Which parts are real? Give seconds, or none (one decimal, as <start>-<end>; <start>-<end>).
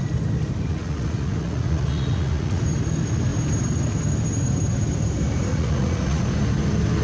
0.0-0.7; 2.6-5.5; 6.2-7.0